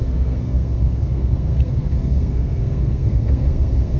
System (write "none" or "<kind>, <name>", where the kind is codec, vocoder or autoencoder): codec, SNAC